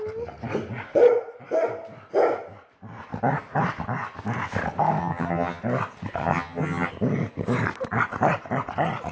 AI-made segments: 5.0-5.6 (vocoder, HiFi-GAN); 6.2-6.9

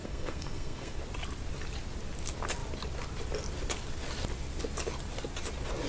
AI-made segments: 0.0-1.0 (codec, SNAC)

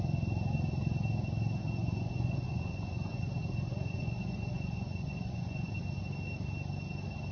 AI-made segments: 1.8-3.2 (vocoder, Vocos); 3.7-5.8

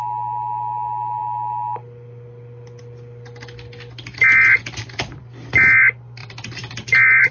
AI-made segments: 4.6-5.2 (vocoder, BigVGAN v2); 6.2-7.3

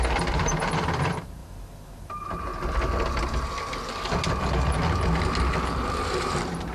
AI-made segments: 0.0-1.4 (vocoder, BigVGAN v2); 2.0-2.5; 5.9-6.7

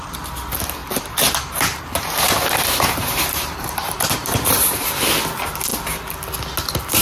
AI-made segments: 0.8-5.0 (vocoder, BigVGAN v2)